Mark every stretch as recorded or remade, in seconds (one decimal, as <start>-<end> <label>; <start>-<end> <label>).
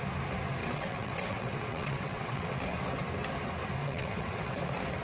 0.0-0.6 recorded; 0.6-2.5 remade; 2.5-3.8 recorded; 3.8-4.6 remade; 4.6-5.0 recorded